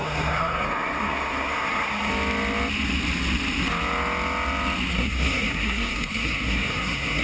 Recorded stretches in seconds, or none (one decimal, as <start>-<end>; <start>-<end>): 2.1-4.9